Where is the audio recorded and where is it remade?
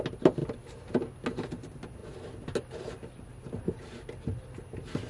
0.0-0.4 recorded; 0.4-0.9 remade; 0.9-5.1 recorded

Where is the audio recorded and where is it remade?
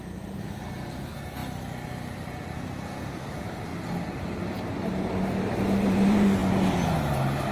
0.0-1.4 remade; 1.4-3.0 recorded; 3.0-3.7 remade; 3.7-4.2 recorded; 4.2-6.4 remade; 6.4-7.5 recorded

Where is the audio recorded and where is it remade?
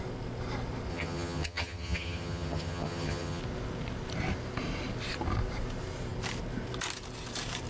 0.0-0.9 recorded; 0.9-3.4 remade; 3.4-7.7 recorded